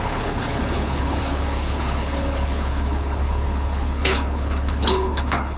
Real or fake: fake